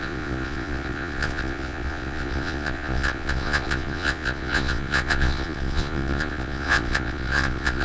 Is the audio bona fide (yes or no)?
no